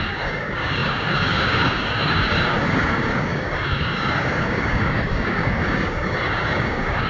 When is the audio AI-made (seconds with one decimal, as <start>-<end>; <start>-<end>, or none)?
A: 0.0-7.1